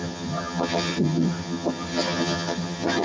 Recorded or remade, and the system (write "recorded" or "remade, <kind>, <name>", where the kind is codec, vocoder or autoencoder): remade, vocoder, HiFi-GAN